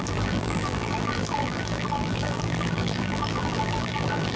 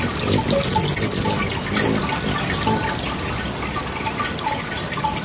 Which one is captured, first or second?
second